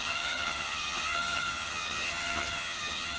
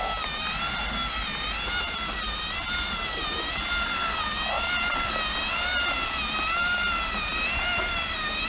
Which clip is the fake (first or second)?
first